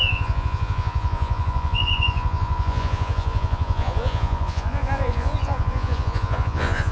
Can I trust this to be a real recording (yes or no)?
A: no